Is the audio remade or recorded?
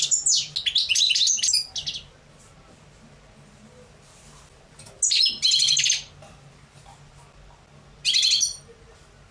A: recorded